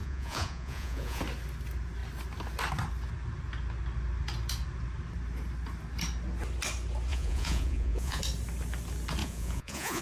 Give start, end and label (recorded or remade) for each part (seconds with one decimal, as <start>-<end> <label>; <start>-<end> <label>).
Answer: 0.0-1.2 remade; 1.2-7.1 recorded; 7.1-8.2 remade; 8.2-9.2 recorded; 9.2-10.0 remade